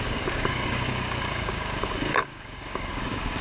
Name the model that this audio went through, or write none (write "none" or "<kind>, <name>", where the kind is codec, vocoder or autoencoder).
codec, DAC